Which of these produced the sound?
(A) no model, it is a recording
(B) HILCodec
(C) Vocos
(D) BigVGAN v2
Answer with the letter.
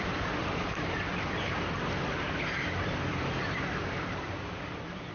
D